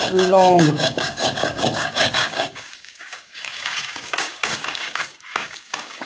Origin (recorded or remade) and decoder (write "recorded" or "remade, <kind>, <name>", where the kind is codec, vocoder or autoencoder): remade, codec, DAC